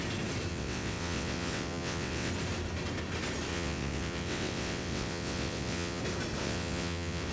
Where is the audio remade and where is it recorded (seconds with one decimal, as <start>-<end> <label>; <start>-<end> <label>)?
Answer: 0.0-0.5 recorded; 0.5-2.3 remade; 2.3-3.5 recorded; 3.5-6.0 remade; 6.0-6.4 recorded; 6.4-7.3 remade